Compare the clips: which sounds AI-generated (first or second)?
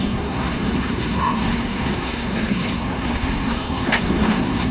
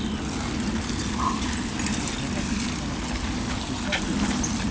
first